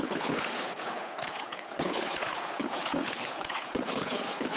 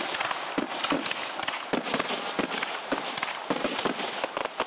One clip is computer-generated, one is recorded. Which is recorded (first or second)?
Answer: second